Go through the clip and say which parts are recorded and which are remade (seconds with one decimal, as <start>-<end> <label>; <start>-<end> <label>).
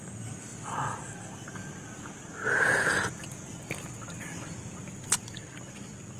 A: 0.0-6.2 recorded